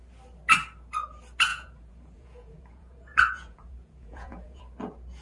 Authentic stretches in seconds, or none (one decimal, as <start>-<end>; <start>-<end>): 0.0-1.5; 4.6-5.2